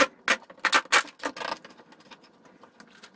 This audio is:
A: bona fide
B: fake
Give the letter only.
A